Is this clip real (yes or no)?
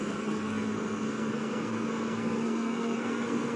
no